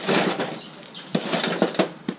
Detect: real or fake real